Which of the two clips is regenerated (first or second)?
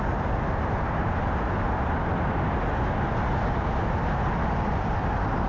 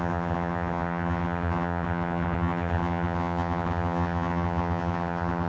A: second